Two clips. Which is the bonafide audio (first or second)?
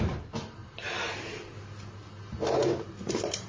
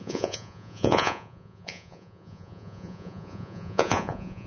first